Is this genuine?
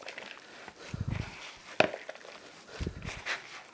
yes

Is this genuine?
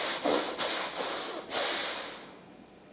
yes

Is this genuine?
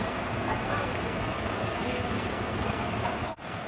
no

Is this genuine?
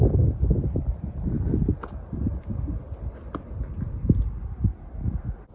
yes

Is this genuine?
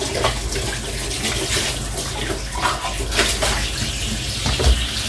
yes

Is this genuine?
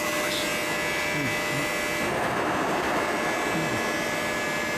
yes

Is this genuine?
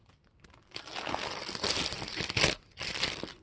yes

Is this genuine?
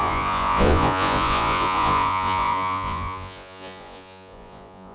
no